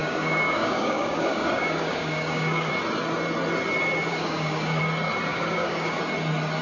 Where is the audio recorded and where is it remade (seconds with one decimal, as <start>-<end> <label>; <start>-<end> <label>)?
0.0-2.7 remade; 2.7-4.1 recorded; 4.1-4.8 remade; 4.8-5.3 recorded; 5.3-6.0 remade; 6.0-6.6 recorded